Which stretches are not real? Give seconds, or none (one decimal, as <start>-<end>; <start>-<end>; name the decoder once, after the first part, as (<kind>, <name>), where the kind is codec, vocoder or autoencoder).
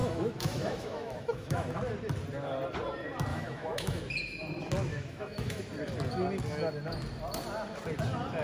0.0-1.8 (autoencoder, DAC-VAE); 3.3-4.0; 4.9-5.6